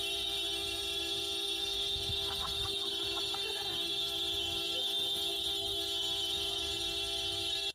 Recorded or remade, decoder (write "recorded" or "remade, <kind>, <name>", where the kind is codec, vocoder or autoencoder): remade, codec, SNAC